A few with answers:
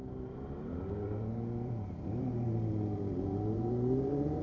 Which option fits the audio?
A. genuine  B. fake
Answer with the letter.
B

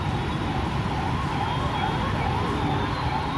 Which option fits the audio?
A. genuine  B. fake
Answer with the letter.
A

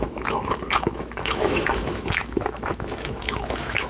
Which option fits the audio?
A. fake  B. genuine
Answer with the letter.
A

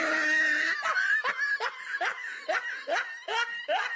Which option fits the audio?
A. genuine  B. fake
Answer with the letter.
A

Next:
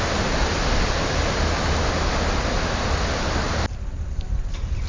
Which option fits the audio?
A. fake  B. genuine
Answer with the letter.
B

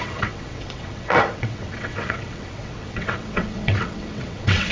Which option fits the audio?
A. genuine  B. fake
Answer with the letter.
B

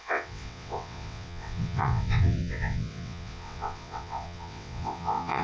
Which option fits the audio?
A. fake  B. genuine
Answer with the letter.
A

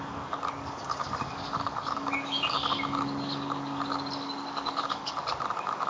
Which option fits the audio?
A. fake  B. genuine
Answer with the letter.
A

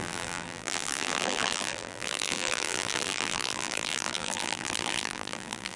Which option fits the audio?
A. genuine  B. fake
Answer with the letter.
B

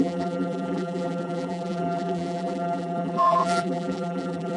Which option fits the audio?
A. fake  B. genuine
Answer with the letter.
A